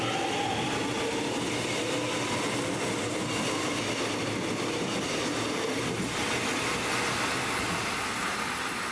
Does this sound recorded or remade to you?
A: recorded